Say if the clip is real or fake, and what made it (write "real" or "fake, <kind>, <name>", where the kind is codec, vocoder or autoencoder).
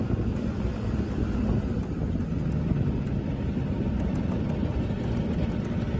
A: real